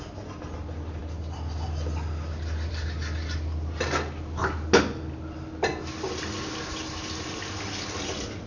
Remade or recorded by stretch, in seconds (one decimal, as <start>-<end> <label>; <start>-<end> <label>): 0.0-8.5 recorded